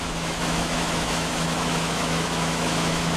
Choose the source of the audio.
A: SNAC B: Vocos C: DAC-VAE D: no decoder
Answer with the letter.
C